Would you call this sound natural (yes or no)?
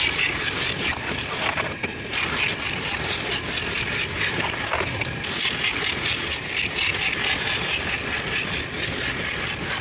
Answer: yes